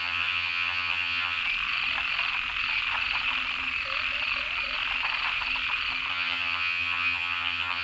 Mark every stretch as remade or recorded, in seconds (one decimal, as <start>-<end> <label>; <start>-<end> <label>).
0.0-1.4 remade; 1.4-6.1 recorded; 6.1-7.8 remade